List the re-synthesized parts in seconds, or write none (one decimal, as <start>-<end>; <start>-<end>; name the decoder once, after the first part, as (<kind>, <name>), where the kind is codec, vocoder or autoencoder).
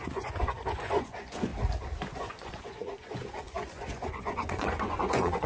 0.0-1.5 (vocoder, Vocos); 2.1-5.5